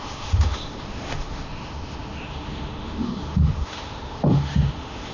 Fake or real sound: fake